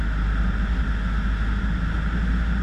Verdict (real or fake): real